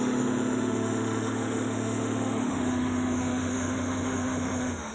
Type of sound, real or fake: fake